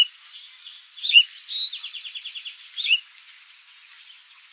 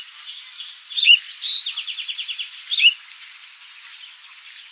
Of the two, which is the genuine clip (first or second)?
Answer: first